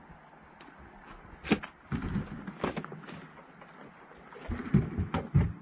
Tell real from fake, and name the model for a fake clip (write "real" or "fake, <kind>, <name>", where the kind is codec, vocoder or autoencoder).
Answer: real